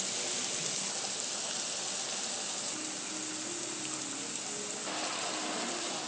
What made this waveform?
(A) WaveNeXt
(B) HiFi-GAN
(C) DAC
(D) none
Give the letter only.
D